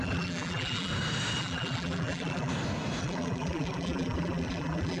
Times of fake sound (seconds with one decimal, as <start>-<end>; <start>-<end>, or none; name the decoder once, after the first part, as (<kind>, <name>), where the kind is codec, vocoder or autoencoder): 0.0-0.9 (vocoder, BigVGAN v2); 1.4-2.5; 3.0-5.0